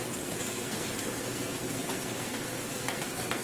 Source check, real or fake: fake